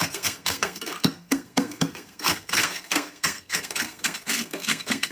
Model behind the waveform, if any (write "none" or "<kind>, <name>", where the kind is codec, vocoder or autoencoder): codec, SNAC